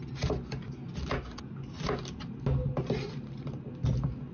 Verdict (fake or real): real